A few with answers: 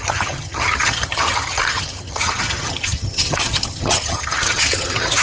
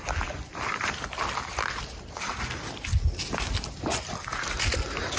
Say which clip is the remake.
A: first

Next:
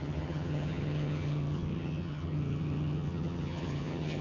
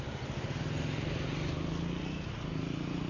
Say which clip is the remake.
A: first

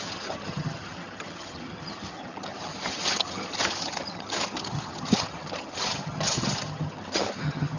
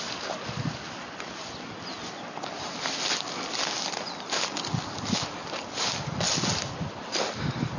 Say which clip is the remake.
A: first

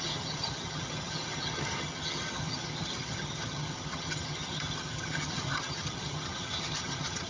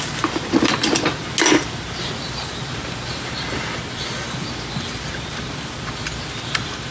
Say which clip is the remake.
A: first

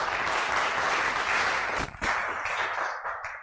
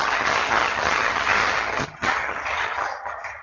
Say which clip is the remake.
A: second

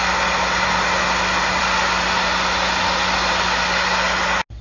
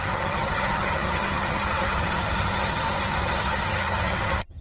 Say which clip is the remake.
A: second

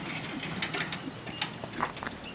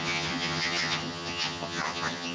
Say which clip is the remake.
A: second